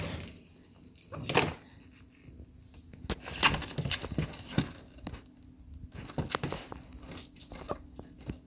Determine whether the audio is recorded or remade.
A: recorded